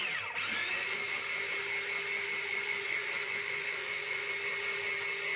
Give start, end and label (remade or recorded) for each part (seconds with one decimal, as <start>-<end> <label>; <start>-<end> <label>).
0.0-0.6 recorded; 0.6-1.2 remade; 1.2-2.5 recorded; 2.5-4.3 remade; 4.3-5.4 recorded